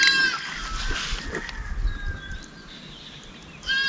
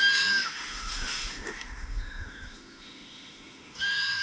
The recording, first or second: first